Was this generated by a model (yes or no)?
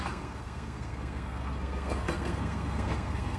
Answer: yes